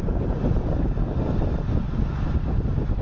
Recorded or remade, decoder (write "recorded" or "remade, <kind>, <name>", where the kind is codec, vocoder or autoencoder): recorded